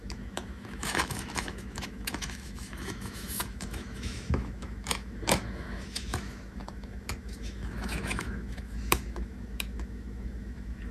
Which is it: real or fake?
fake